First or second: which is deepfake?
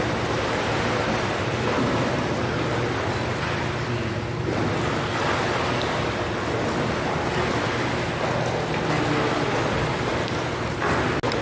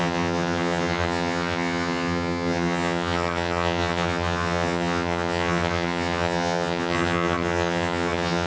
second